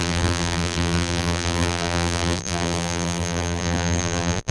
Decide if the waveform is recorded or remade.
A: remade